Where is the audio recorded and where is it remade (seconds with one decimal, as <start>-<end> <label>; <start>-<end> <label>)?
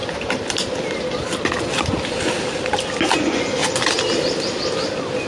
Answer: 0.0-3.2 recorded; 3.2-3.6 remade; 3.6-5.3 recorded